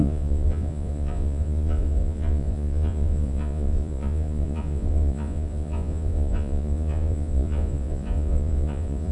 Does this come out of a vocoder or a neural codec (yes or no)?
yes